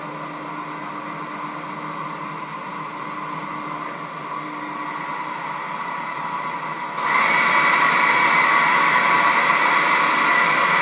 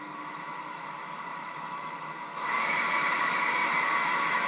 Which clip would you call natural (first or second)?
first